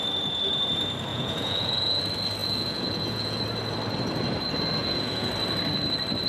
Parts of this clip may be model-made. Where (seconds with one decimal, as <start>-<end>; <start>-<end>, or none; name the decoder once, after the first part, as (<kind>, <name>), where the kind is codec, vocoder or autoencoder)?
1.1-2.0 (vocoder, Vocos); 2.4-3.4; 4.8-5.3